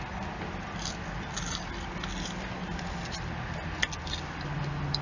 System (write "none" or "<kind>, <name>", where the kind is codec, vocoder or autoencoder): none